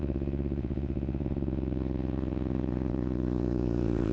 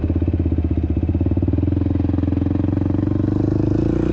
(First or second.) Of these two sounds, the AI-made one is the first